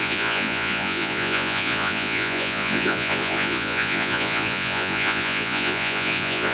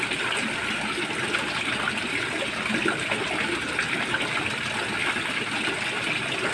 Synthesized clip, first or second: first